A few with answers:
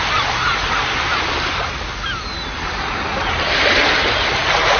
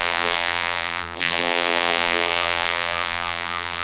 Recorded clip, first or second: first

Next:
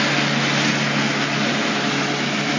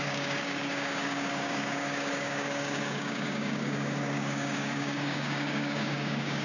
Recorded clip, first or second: first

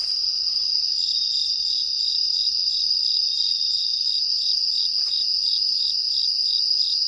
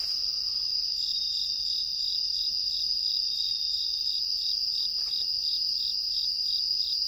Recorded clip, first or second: second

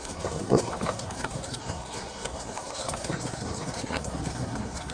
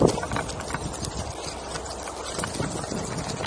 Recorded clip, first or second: second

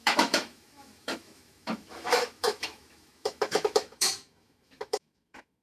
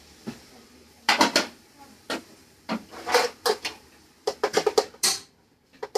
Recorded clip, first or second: second